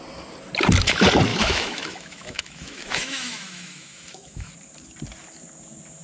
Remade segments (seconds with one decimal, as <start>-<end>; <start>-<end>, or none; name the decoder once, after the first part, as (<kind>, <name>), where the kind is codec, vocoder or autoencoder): 1.3-4.5 (autoencoder, DAC-VAE)